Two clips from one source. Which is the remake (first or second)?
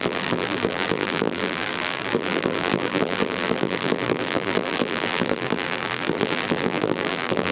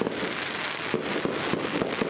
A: first